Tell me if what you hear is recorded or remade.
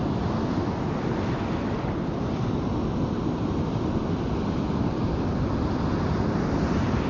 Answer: recorded